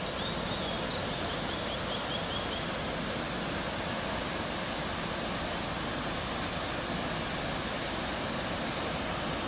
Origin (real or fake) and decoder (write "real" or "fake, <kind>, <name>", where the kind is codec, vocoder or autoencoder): real